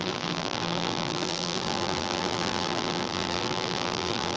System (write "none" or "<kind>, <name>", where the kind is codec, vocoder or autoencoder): vocoder, BigVGAN v2